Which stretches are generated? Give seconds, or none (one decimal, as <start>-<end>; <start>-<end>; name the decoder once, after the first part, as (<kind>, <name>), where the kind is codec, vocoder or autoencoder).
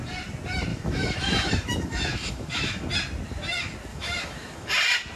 0.7-2.9 (autoencoder, DAC-VAE); 3.9-4.7